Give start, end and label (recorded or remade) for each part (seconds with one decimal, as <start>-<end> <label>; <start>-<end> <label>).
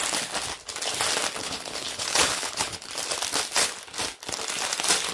0.0-1.4 recorded; 1.4-2.9 remade; 2.9-5.1 recorded